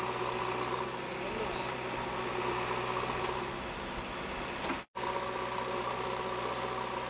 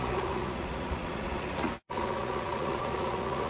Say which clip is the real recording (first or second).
first